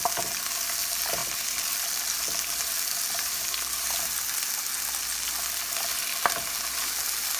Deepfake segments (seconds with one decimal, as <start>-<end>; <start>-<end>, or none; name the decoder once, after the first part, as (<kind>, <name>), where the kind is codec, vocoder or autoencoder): none

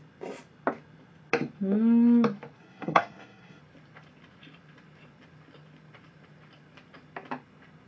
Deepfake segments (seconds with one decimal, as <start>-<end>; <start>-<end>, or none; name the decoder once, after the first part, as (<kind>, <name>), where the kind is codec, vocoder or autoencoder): 2.6-3.6 (codec, SNAC)

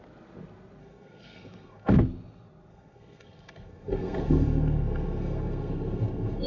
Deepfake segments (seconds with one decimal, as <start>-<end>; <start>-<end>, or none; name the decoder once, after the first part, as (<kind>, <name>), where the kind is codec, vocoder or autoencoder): 0.8-1.9 (codec, SNAC); 2.7-6.5

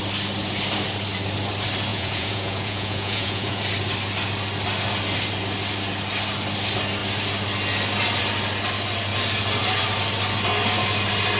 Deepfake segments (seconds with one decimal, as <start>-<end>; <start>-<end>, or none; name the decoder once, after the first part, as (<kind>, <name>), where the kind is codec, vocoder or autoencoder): 1.9-3.6 (vocoder, Vocos)

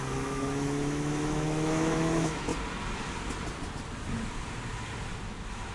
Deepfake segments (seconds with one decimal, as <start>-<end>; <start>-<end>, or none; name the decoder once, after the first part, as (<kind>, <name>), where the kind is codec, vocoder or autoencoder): 0.0-2.5 (autoencoder, DAC-VAE)

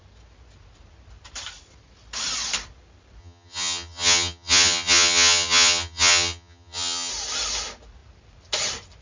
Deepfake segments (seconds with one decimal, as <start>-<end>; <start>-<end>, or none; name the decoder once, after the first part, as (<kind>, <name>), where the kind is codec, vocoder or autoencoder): 3.2-7.1 (vocoder, HiFi-GAN)

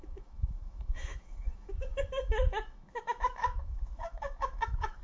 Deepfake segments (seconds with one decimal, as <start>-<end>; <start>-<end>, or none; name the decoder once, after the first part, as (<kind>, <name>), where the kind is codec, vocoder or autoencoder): 0.0-5.0 (autoencoder, DAC-VAE)